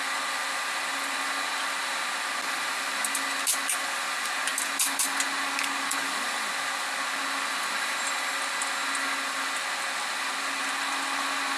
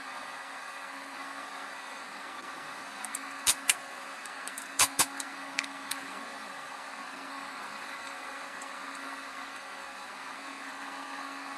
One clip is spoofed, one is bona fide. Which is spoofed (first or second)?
second